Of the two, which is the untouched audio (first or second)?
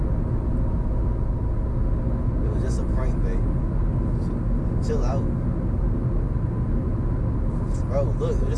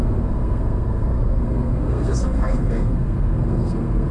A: first